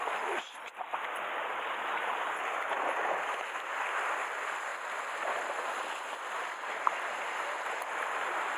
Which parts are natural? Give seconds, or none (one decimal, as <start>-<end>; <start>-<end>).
0.0-8.6